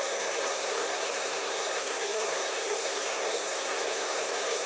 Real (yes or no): no